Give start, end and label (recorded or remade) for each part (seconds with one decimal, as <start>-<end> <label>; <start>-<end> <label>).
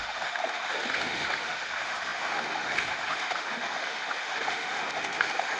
0.0-5.6 remade